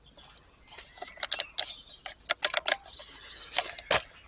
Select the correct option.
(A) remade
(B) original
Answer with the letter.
B